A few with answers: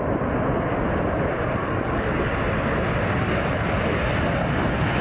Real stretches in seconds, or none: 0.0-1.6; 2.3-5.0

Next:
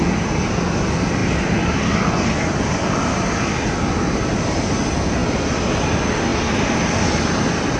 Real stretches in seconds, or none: 0.0-7.8

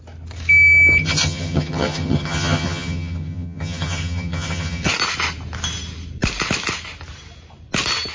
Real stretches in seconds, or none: 0.0-1.0; 4.9-8.1

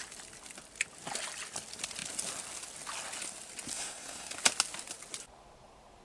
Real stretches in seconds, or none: 0.0-3.7; 4.3-6.0